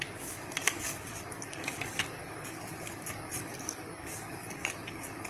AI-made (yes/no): yes